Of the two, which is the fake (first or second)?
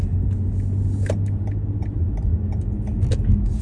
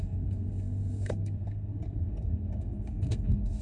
second